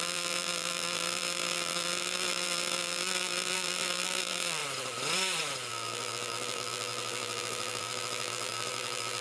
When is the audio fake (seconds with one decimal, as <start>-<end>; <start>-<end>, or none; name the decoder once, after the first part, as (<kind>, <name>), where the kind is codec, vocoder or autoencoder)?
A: 0.0-4.6 (vocoder, BigVGAN v2); 5.7-9.2